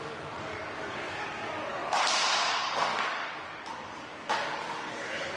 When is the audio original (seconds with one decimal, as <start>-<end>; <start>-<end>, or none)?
1.8-2.4